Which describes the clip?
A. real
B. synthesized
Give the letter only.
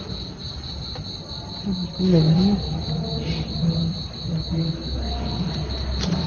A